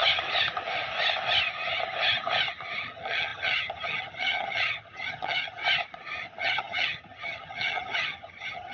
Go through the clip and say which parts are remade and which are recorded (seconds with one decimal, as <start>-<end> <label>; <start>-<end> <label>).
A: 0.0-2.8 recorded; 2.8-5.6 remade; 5.6-6.4 recorded; 6.4-8.7 remade